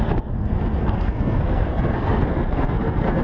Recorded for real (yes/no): no